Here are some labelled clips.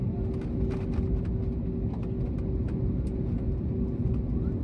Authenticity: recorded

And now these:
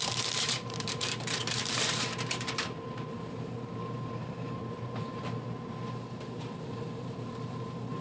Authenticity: remade